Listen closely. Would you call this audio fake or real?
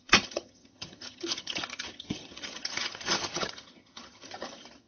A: fake